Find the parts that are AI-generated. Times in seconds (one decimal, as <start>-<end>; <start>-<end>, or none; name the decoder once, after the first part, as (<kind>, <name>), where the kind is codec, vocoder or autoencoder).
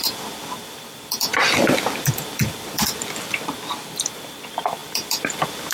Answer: 0.0-5.7 (vocoder, BigVGAN v2)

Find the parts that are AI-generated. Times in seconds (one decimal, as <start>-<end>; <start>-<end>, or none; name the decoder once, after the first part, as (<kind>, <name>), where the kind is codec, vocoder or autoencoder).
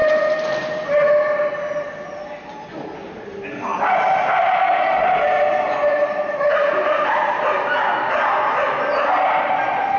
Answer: none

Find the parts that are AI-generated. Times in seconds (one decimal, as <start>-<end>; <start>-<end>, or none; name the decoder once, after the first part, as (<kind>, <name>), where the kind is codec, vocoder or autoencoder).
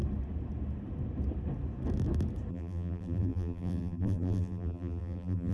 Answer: 2.5-5.5 (vocoder, BigVGAN v2)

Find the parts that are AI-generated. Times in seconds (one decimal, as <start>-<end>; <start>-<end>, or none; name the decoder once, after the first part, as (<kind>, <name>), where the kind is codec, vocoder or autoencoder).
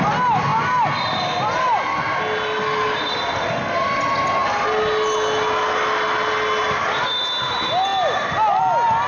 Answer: none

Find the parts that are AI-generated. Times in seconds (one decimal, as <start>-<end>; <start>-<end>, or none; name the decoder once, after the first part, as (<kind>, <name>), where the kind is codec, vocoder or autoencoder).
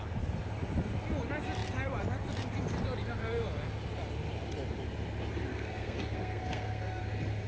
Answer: 5.5-7.0 (codec, SNAC)